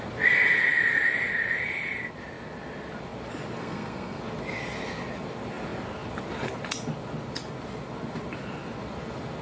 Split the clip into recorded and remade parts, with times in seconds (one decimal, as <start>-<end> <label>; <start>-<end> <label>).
0.0-3.6 recorded; 3.6-4.2 remade; 4.2-9.4 recorded

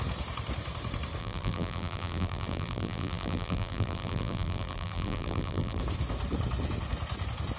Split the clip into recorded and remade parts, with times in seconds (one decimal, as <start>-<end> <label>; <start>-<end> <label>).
0.0-1.2 recorded; 1.2-5.8 remade; 5.8-7.6 recorded

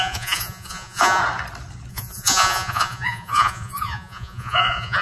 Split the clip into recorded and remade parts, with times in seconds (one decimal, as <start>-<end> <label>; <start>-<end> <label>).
0.0-1.2 remade; 1.2-1.9 recorded; 1.9-5.0 remade

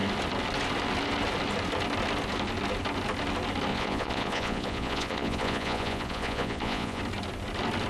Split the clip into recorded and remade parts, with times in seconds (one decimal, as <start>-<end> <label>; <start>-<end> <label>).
0.0-3.7 recorded; 3.7-7.0 remade; 7.0-7.9 recorded

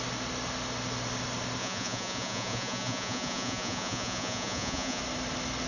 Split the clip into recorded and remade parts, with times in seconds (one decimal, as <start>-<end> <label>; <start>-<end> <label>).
0.0-1.6 recorded; 1.6-5.0 remade; 5.0-5.7 recorded

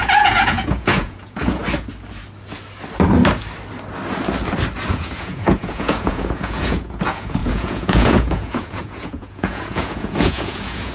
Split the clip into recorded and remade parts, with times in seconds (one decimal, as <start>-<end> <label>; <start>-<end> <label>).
0.0-1.6 remade; 1.6-4.9 recorded; 4.9-10.9 remade

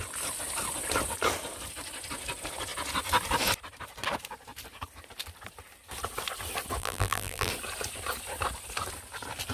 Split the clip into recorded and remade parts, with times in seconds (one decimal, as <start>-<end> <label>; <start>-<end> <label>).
0.0-6.8 recorded; 6.8-7.5 remade; 7.5-9.5 recorded

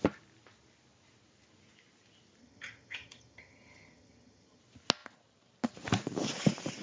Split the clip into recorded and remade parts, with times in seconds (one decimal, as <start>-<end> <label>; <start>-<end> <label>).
0.0-2.4 recorded; 2.4-4.6 remade; 4.6-6.8 recorded